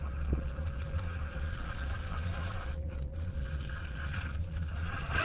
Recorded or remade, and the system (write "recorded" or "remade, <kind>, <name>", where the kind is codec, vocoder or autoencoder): remade, vocoder, Vocos